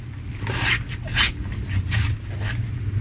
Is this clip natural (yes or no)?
yes